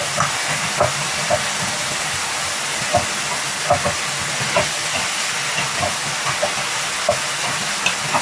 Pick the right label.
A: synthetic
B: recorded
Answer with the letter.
B